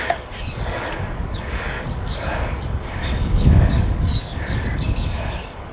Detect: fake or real fake